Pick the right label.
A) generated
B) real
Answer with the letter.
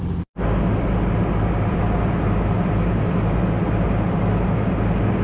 B